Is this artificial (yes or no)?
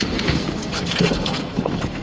yes